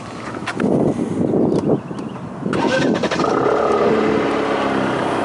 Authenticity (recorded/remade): recorded